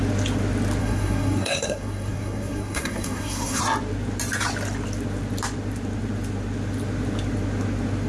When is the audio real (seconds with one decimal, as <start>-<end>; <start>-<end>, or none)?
0.0-0.8; 3.6-8.1

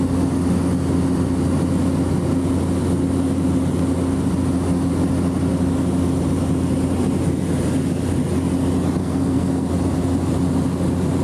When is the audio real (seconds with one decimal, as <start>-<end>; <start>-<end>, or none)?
0.0-9.0; 9.7-11.2

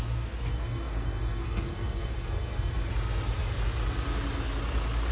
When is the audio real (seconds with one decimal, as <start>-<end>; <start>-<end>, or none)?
0.0-0.5; 2.9-5.1

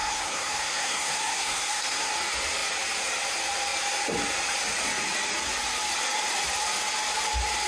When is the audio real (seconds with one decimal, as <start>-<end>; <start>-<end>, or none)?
2.1-7.7

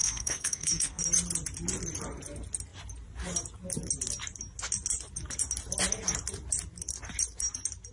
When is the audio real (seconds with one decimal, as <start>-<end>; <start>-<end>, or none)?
1.0-7.9

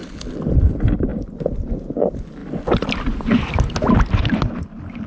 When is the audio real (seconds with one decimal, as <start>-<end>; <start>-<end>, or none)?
0.0-5.1

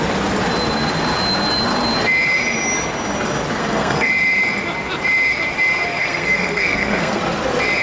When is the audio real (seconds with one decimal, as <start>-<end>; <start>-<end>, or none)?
0.0-3.6; 4.1-5.9; 7.2-7.8

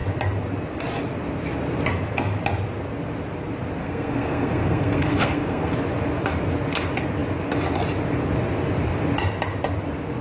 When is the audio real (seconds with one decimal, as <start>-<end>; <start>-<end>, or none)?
0.0-3.8; 5.7-10.2